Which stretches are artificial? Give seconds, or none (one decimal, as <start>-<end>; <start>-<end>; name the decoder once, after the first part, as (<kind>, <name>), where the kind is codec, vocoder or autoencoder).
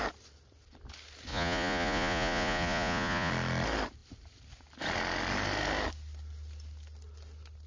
1.3-3.3 (vocoder, Vocos)